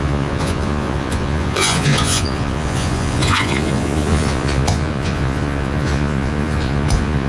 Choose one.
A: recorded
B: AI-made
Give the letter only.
B